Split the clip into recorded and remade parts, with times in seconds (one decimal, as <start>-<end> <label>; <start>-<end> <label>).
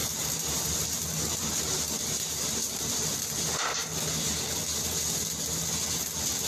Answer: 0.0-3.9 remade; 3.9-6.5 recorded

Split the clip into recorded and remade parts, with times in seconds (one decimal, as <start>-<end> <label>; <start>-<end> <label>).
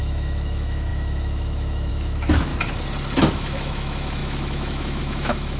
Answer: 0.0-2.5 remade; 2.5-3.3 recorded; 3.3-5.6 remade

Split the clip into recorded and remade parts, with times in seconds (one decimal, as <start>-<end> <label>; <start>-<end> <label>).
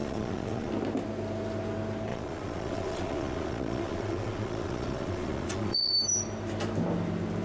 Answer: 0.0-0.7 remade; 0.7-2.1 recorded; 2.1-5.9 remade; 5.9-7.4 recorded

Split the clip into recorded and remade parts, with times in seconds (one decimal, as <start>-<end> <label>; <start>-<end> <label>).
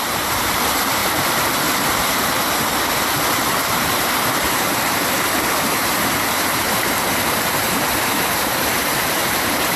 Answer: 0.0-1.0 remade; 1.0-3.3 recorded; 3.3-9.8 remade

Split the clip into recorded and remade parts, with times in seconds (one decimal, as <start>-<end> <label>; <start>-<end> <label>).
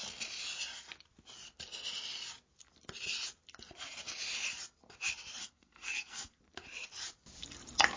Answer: 0.0-5.4 recorded; 5.4-6.3 remade; 6.3-8.0 recorded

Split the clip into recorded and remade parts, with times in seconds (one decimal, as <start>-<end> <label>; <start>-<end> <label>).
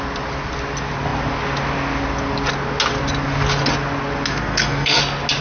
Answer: 0.0-4.3 recorded; 4.3-5.0 remade; 5.0-5.4 recorded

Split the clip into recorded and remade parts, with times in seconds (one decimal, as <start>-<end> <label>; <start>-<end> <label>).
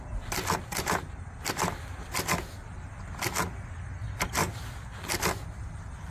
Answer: 0.0-6.1 recorded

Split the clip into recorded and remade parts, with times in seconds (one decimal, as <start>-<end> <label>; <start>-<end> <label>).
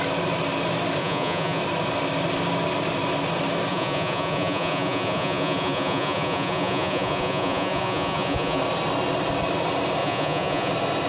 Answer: 0.0-1.0 recorded; 1.0-1.6 remade; 1.6-3.7 recorded; 3.7-8.6 remade; 8.6-10.0 recorded; 10.0-10.7 remade; 10.7-11.1 recorded